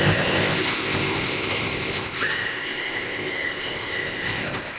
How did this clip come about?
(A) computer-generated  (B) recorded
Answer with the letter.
A